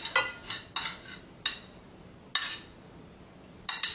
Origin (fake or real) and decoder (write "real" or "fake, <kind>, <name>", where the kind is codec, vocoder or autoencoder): real